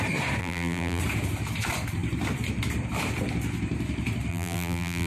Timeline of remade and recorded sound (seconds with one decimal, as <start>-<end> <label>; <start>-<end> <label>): 0.0-0.4 recorded; 0.4-1.0 remade; 1.0-4.3 recorded; 4.3-5.1 remade